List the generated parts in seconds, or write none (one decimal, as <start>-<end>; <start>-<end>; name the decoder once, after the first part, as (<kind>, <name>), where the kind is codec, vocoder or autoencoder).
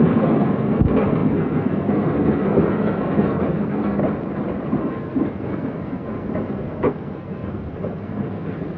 0.0-4.0 (codec, SNAC); 4.8-8.8